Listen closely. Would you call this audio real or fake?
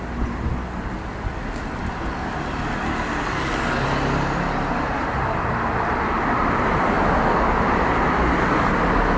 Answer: real